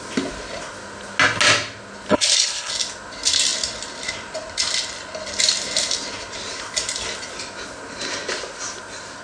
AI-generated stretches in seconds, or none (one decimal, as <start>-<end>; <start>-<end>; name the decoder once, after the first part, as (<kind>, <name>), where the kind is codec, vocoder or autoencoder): 2.1-2.7 (codec, HILCodec)